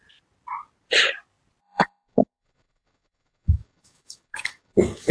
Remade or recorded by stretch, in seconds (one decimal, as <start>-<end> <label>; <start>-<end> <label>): 0.0-1.6 recorded; 1.6-5.1 remade